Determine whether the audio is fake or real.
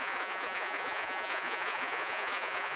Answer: fake